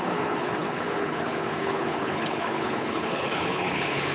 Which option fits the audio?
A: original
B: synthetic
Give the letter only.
B